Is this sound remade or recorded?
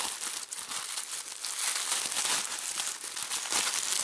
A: recorded